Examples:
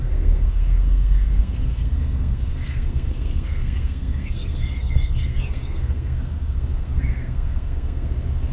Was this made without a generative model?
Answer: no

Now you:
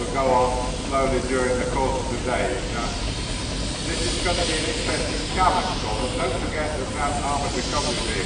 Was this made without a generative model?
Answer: yes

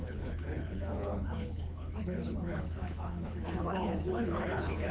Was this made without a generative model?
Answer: no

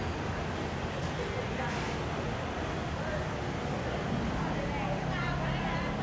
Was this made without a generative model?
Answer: yes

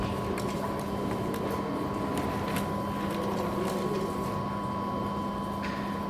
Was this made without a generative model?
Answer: yes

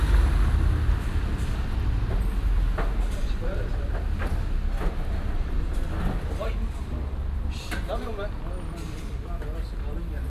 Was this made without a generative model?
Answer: yes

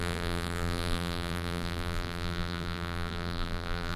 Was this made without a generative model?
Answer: no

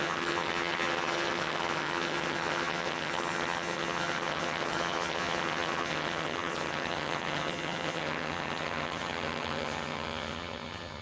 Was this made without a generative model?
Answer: no